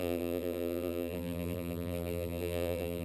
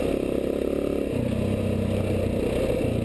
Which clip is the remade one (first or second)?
first